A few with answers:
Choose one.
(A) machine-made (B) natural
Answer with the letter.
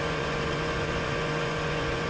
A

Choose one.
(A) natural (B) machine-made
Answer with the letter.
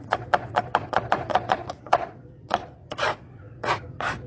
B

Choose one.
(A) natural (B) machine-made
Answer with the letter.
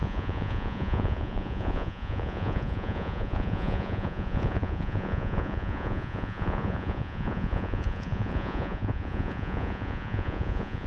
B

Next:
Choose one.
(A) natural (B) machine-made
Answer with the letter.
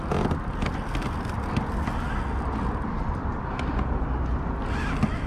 A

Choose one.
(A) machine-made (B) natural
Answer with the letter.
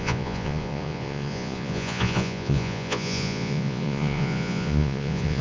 A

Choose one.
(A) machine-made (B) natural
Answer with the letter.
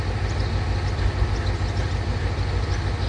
B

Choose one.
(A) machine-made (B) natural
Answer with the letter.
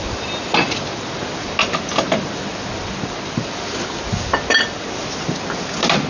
B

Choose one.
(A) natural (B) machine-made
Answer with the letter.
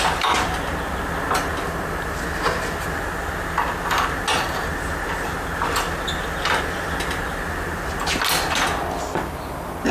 A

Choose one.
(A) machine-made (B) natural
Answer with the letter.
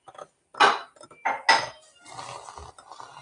B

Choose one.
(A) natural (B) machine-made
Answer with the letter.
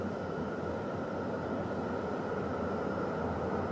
A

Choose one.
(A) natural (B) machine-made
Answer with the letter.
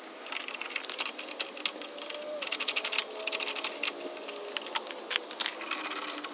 A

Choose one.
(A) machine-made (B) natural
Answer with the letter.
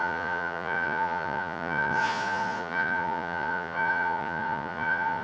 A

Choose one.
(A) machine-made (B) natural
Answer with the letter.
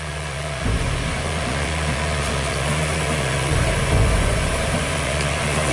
A